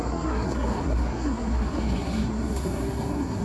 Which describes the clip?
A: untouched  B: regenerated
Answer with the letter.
B